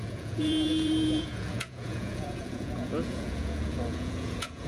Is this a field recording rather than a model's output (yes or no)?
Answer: no